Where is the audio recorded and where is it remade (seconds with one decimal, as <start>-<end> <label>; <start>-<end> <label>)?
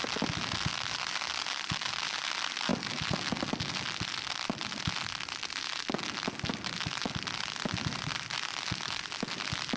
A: 0.0-9.8 recorded